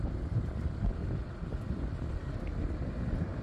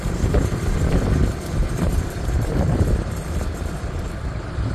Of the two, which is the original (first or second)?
first